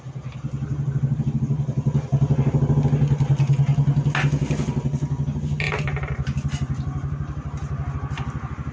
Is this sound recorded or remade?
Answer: recorded